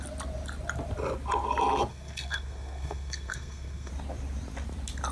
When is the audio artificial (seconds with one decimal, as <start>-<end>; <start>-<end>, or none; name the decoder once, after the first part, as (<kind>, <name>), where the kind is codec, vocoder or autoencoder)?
1.9-3.9 (codec, SNAC)